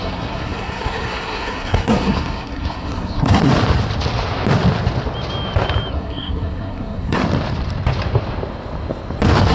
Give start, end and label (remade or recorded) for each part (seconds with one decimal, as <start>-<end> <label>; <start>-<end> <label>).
0.0-3.5 remade; 3.5-5.9 recorded; 5.9-7.2 remade; 7.2-9.5 recorded